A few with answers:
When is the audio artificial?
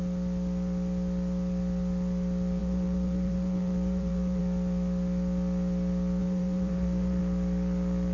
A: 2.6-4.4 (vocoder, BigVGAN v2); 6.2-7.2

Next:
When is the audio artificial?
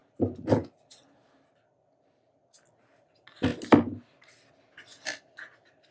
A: 0.0-1.5 (vocoder, BigVGAN v2)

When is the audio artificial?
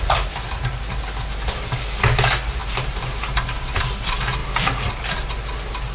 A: 2.6-3.8 (vocoder, BigVGAN v2)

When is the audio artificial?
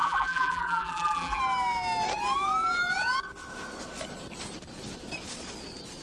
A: 0.0-1.4 (vocoder, BigVGAN v2)